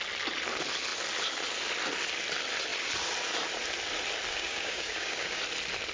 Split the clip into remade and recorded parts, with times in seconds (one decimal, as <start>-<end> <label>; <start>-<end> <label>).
0.0-4.3 recorded; 4.3-5.4 remade; 5.4-5.9 recorded